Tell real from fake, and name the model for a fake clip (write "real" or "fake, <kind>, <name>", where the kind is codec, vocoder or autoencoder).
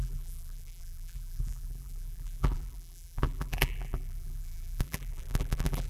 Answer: fake, vocoder, BigVGAN v2